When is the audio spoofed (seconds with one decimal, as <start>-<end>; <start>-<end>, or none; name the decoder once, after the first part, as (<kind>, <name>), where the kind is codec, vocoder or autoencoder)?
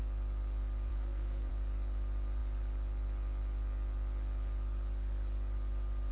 0.9-1.5 (codec, SNAC)